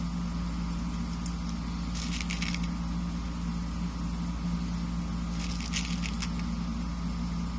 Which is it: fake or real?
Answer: real